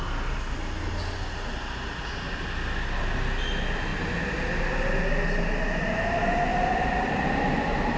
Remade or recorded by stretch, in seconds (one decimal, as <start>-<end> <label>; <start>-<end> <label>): 0.0-6.5 recorded; 6.5-8.0 remade